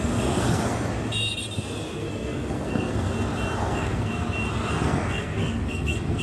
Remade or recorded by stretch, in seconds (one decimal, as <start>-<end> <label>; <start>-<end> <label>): 0.0-0.9 remade; 0.9-2.0 recorded; 2.0-3.1 remade; 3.1-3.6 recorded; 3.6-4.1 remade; 4.1-4.7 recorded; 4.7-6.2 remade